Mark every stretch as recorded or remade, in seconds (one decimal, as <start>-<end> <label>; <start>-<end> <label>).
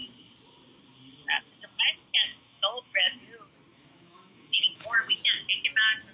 0.0-2.3 recorded; 2.3-3.2 remade; 3.2-3.7 recorded; 3.7-5.2 remade; 5.2-6.1 recorded